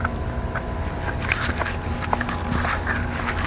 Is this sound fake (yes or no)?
no